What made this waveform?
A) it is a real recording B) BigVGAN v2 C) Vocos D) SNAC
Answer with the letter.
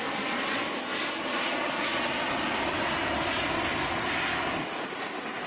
A